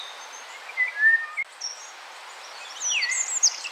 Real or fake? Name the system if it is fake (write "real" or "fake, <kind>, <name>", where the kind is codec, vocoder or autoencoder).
real